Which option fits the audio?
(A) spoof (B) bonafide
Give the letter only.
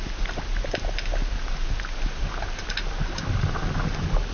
B